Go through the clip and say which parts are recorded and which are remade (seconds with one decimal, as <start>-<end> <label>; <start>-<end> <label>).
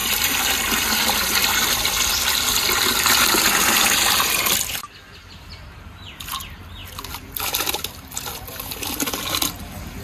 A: 0.0-1.0 remade; 1.0-6.8 recorded; 6.8-8.6 remade; 8.6-10.0 recorded